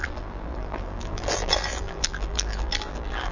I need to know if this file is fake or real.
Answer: fake